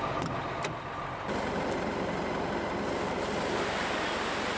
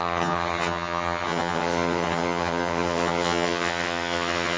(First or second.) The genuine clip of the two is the first